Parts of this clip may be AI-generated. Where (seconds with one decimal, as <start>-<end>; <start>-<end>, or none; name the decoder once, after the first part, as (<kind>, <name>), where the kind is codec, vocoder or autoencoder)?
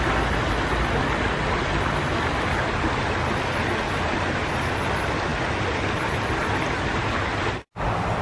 none